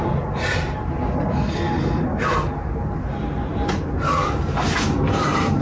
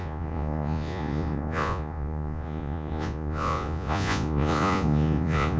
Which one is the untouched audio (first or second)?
first